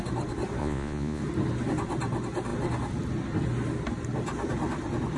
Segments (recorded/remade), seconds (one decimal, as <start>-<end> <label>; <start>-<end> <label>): 0.0-0.6 recorded; 0.6-1.2 remade; 1.2-5.2 recorded